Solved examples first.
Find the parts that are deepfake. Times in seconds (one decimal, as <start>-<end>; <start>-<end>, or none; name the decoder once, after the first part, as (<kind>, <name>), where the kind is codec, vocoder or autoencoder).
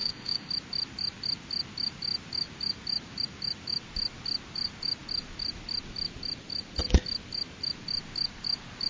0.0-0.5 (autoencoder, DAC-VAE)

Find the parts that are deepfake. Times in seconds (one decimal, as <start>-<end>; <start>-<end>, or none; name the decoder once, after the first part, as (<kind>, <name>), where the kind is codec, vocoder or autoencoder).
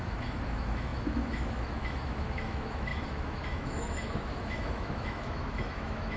0.0-6.2 (autoencoder, DAC-VAE)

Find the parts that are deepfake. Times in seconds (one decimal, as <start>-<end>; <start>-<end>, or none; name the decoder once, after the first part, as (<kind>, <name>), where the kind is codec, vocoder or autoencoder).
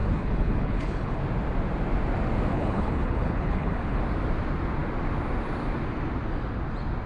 0.0-1.2 (codec, HILCodec); 2.5-4.0